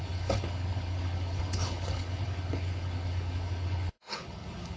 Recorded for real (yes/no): no